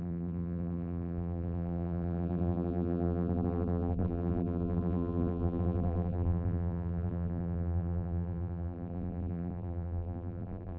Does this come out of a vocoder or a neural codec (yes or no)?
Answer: yes